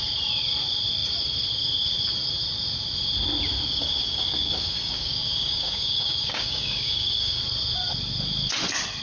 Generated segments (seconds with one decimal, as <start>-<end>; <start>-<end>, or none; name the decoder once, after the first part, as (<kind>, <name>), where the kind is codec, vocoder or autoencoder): 3.8-7.4 (codec, DAC)